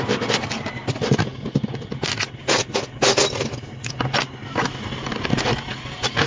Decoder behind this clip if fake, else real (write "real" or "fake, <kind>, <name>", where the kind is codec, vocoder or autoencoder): real